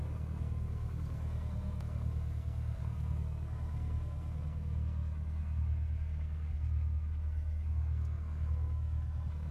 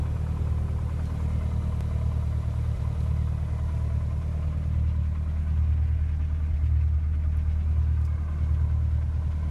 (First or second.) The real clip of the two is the second